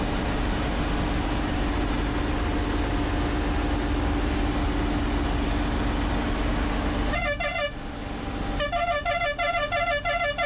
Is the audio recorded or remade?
recorded